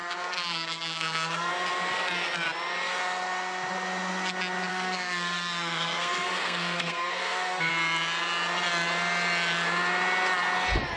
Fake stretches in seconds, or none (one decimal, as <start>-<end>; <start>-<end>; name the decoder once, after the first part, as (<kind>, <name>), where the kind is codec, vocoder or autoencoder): 0.0-1.5 (codec, SNAC); 4.7-7.7